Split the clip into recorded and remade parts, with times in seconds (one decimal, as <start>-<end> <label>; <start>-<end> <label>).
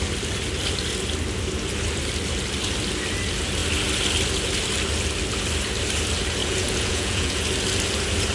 0.0-6.4 recorded; 6.4-7.4 remade; 7.4-8.3 recorded